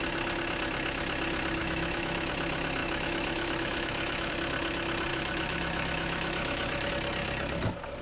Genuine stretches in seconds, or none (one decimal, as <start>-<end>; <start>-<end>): 0.0-1.6; 2.3-2.8; 4.3-5.1; 6.9-8.0